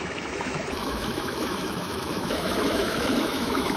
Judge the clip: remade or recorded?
remade